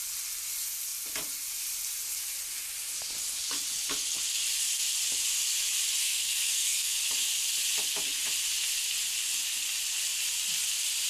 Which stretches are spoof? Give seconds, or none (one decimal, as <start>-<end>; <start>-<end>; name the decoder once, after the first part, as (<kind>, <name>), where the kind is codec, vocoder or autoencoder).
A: 6.0-7.0 (codec, SNAC)